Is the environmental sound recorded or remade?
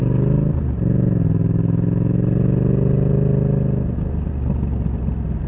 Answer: recorded